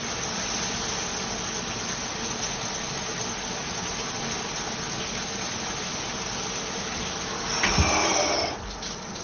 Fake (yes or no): no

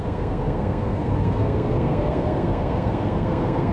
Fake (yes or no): yes